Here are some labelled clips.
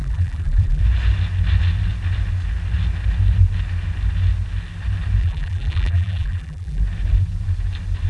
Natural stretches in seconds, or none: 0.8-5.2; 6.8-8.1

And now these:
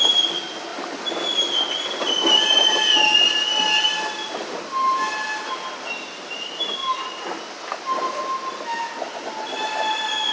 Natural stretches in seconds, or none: 0.0-6.8; 7.4-10.3

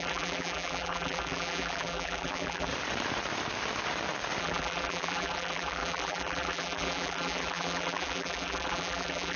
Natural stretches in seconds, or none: 2.7-4.4

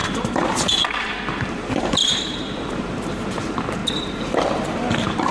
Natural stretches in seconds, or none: none

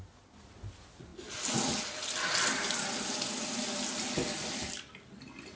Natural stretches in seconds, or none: 0.0-5.6

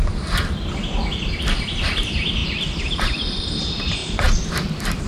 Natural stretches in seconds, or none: 0.0-4.0; 4.5-5.1

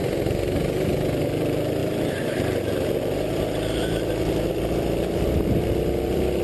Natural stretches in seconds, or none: none

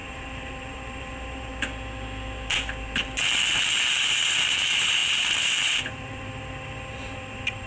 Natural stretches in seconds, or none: 1.5-4.0